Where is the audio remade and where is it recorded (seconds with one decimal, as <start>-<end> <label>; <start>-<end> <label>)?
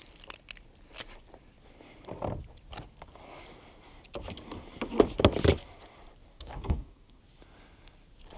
0.0-6.3 recorded; 6.3-7.2 remade; 7.2-8.4 recorded